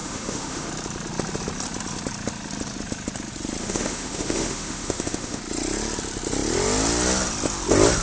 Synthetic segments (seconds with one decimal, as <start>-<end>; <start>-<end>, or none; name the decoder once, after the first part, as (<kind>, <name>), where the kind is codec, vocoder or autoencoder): 0.0-0.7 (autoencoder, DAC-VAE); 3.6-5.4